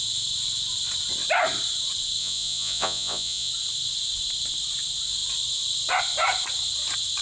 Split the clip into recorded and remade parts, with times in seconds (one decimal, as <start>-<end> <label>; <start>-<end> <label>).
0.0-2.2 recorded; 2.2-3.5 remade; 3.5-7.2 recorded